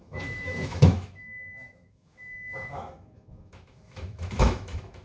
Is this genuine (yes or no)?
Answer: no